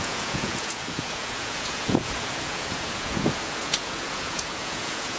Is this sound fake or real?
fake